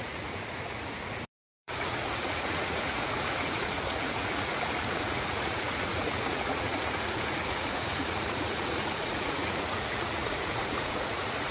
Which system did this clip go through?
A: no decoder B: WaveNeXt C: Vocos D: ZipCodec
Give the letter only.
C